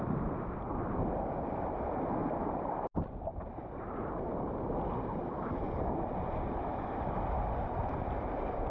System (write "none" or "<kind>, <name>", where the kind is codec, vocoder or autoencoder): none